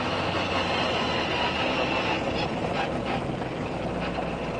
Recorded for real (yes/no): yes